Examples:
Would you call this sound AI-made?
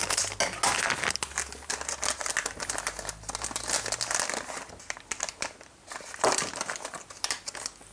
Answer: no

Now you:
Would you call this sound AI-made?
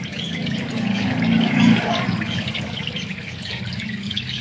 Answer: yes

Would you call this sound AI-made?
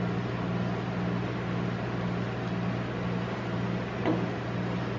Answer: no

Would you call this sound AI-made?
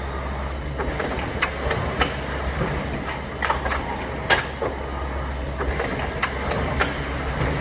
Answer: no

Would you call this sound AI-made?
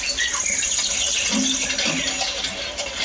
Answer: no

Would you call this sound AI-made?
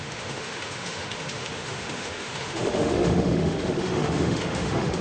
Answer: yes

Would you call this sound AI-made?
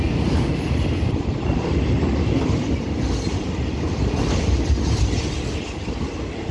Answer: no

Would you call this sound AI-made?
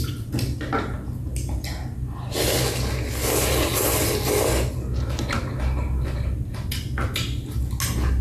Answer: no